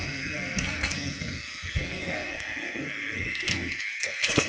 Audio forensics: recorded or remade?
remade